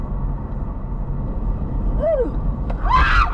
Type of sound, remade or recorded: recorded